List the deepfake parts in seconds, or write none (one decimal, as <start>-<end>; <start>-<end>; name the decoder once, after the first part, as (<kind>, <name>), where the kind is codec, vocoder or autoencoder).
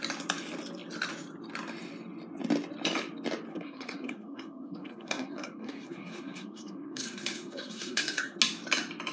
3.5-8.4 (codec, SNAC)